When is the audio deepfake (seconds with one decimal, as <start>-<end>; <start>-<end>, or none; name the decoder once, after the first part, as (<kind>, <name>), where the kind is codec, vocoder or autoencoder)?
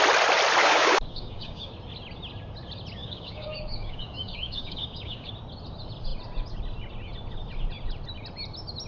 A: 0.6-1.7 (codec, DAC); 3.0-5.3